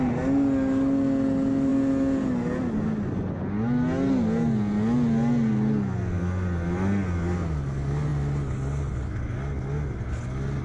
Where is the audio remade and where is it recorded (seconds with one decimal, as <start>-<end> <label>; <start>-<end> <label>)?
0.0-10.6 recorded